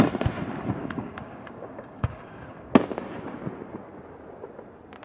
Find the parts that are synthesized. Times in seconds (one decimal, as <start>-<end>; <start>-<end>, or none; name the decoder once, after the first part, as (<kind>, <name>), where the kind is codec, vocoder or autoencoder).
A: 0.8-2.7 (codec, DAC)